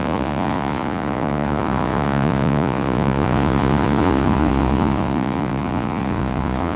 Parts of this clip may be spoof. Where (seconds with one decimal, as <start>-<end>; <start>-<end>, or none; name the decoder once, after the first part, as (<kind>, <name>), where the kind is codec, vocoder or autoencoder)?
0.0-6.8 (vocoder, Vocos)